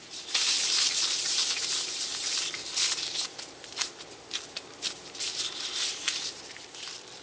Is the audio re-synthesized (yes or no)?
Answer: no